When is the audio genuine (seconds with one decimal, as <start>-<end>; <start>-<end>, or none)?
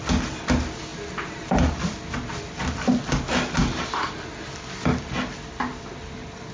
0.0-6.5